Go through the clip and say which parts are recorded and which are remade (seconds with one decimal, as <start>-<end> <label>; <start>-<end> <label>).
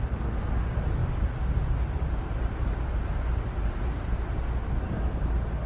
0.0-1.0 recorded; 1.0-4.1 remade; 4.1-5.7 recorded